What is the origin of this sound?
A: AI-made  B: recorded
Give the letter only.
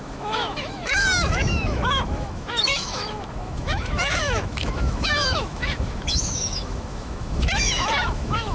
A